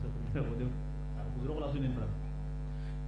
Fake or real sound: real